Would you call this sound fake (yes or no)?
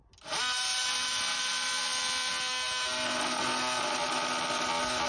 no